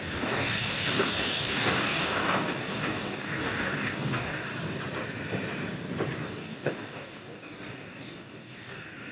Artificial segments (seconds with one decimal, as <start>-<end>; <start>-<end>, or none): 0.0-4.5; 6.2-9.1